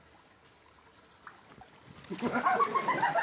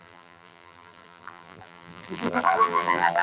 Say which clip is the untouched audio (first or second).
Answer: first